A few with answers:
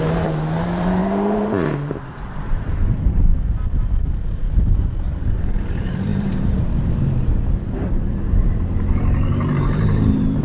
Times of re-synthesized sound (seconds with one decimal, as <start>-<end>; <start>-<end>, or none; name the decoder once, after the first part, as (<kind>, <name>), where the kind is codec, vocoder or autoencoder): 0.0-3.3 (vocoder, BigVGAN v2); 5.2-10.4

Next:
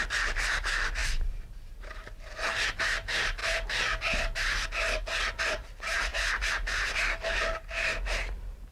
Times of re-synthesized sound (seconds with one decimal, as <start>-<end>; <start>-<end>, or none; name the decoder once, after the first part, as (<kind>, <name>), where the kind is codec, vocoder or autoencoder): 0.0-3.4 (vocoder, BigVGAN v2); 5.4-8.7

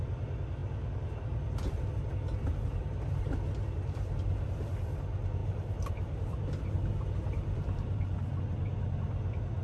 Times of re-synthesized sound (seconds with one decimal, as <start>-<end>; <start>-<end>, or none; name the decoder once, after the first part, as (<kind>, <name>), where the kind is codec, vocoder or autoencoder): 5.4-8.4 (vocoder, BigVGAN v2)

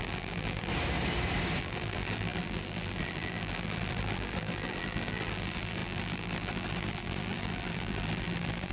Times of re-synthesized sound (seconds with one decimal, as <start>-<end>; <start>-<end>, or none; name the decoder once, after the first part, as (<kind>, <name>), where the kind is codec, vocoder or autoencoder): 0.0-0.7 (vocoder, BigVGAN v2); 1.6-8.7

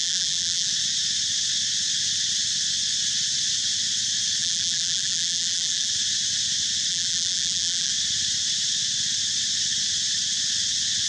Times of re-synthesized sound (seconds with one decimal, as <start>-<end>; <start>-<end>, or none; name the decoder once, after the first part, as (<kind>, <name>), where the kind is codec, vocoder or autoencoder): 0.0-0.7 (vocoder, BigVGAN v2); 4.4-5.9; 6.9-7.9

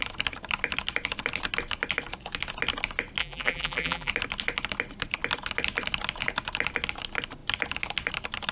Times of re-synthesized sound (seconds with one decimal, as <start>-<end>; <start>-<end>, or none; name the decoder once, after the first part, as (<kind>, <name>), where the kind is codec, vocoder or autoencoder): 3.2-4.1 (vocoder, BigVGAN v2)

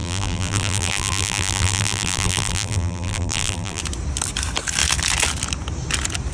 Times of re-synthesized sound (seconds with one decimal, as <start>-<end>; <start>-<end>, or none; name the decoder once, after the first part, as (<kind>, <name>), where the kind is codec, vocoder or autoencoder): 0.0-3.8 (vocoder, BigVGAN v2)

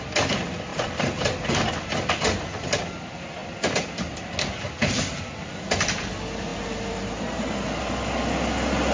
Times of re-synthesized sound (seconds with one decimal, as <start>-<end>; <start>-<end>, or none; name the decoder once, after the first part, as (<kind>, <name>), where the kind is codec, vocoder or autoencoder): 0.7-1.7 (vocoder, BigVGAN v2); 6.5-8.0